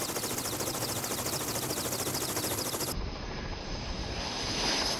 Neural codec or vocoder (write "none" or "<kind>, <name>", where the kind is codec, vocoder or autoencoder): none